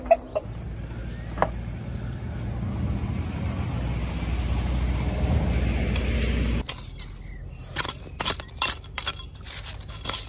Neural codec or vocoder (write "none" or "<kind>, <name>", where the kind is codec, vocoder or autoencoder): none